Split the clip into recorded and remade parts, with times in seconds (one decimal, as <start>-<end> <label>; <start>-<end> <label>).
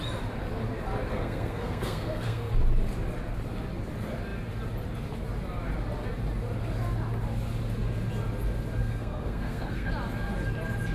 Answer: 0.0-1.1 recorded; 1.1-2.5 remade; 2.5-8.8 recorded; 8.8-9.9 remade; 9.9-10.9 recorded